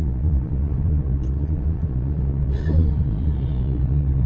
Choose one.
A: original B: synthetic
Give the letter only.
B